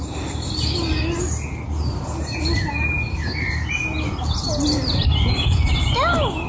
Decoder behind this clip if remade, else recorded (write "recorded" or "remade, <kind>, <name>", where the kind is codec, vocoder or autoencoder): recorded